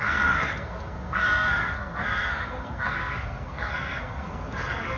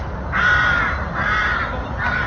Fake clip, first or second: first